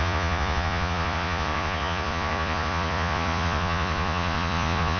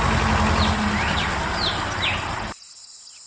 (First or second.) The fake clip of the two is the first